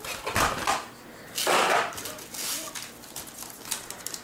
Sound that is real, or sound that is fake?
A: real